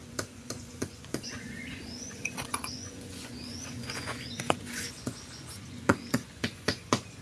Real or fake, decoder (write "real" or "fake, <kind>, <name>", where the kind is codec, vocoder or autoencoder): fake, vocoder, Vocos